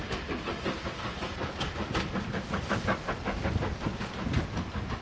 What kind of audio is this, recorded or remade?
recorded